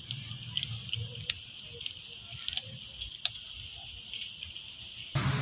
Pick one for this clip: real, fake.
real